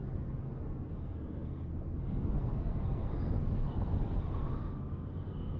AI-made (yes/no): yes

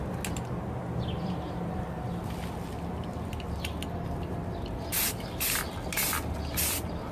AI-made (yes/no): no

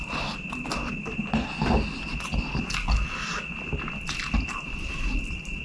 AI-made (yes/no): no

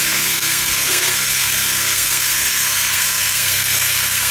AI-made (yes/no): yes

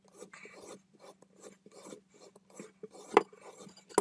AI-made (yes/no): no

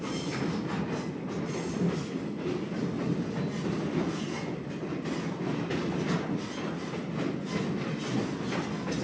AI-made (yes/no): no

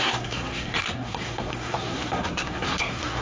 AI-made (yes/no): yes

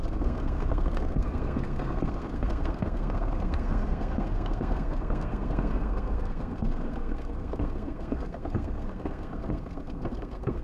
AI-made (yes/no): yes